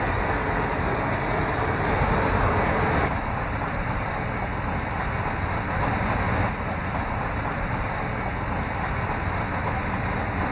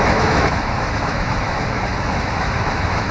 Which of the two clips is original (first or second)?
first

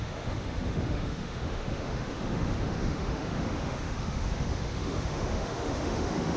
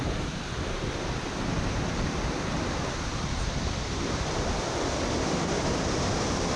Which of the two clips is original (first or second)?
second